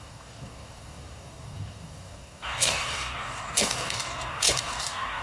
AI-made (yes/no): yes